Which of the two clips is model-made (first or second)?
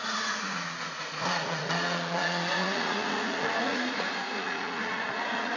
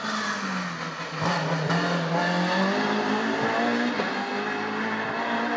first